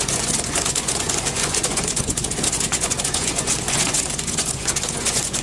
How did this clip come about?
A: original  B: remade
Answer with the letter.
B